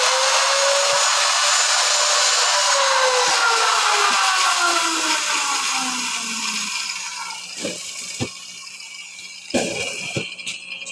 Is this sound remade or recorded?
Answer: recorded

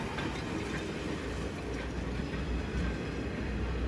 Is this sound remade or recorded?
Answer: remade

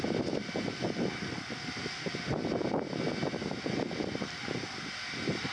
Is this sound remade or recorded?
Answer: recorded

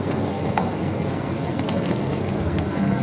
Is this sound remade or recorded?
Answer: remade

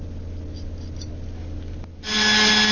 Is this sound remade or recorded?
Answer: recorded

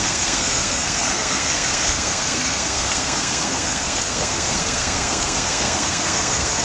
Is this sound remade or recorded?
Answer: remade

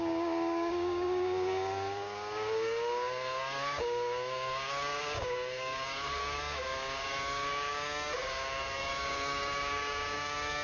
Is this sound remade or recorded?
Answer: remade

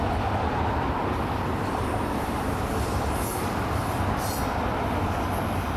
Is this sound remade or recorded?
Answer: recorded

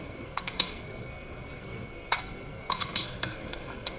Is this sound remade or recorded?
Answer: remade